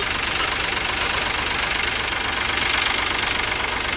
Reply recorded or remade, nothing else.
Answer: recorded